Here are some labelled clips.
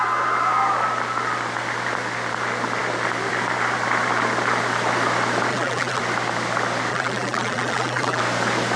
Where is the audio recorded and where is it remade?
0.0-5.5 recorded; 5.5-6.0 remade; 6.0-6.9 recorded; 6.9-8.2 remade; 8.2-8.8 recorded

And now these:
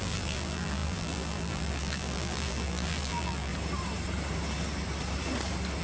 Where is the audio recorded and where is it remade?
0.0-3.5 remade; 3.5-5.8 recorded

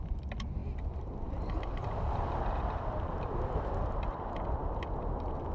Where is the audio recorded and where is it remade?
0.0-5.5 recorded

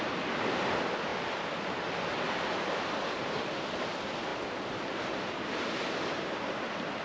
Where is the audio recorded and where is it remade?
0.0-4.3 recorded; 4.3-6.5 remade; 6.5-7.0 recorded